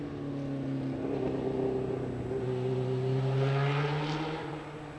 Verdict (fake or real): real